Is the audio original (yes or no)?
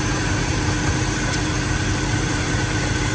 no